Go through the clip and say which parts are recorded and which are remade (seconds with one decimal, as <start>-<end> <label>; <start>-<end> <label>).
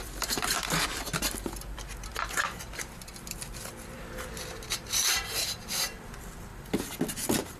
0.0-6.5 remade; 6.5-7.1 recorded; 7.1-7.6 remade